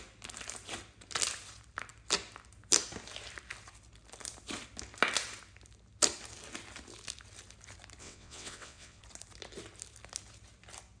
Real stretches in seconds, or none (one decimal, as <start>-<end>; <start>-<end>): 0.0-8.0; 9.0-11.0